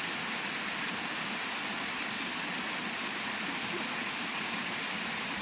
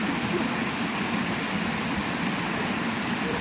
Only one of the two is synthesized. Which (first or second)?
first